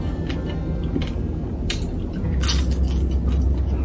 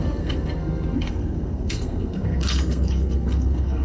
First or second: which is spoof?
second